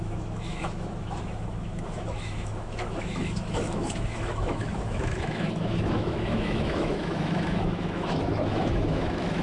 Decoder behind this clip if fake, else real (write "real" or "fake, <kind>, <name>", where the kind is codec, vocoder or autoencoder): fake, autoencoder, DAC-VAE